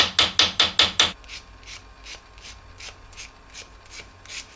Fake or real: real